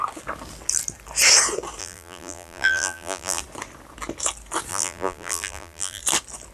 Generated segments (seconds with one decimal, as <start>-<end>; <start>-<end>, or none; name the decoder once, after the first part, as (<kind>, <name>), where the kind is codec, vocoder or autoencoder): 1.8-3.4 (vocoder, BigVGAN v2); 4.7-6.0